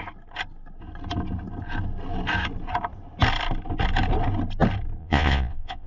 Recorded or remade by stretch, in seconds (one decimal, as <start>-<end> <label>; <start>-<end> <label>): 0.0-5.0 recorded; 5.0-5.9 remade